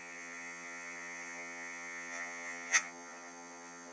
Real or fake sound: fake